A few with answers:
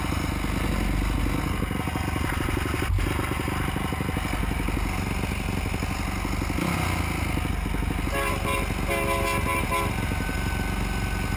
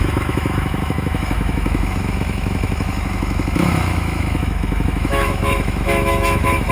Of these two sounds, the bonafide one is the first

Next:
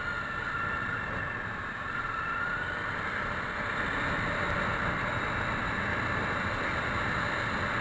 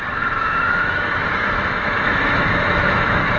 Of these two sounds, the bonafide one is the first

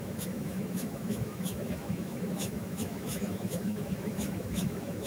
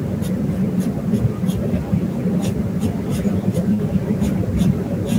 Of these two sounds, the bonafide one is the second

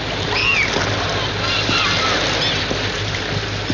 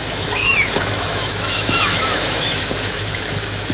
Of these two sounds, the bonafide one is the first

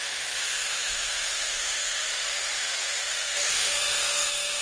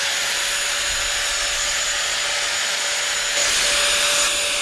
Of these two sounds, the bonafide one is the second